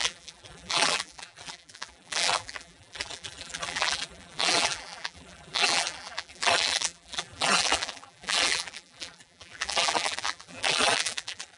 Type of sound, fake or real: fake